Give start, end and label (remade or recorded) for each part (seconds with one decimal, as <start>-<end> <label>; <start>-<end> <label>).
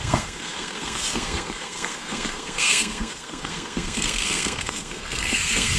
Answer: 0.0-5.8 remade